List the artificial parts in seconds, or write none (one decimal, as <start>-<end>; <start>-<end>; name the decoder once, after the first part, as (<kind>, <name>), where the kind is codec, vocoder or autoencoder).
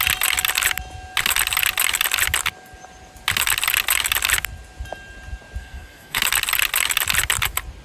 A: 5.6-6.2 (codec, SNAC)